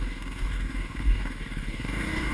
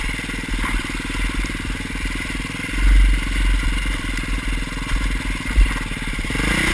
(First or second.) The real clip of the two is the second